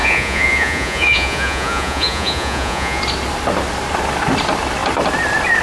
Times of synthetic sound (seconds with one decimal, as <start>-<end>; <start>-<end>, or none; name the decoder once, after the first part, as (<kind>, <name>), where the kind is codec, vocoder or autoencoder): 0.0-3.0 (vocoder, Vocos)